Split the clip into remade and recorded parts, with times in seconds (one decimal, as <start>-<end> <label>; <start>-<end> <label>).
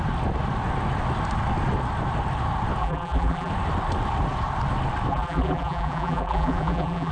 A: 0.0-2.8 recorded; 2.8-3.5 remade; 3.5-5.1 recorded; 5.1-7.1 remade